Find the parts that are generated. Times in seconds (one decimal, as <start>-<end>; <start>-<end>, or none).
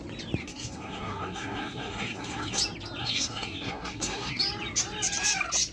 0.4-2.6; 3.0-4.4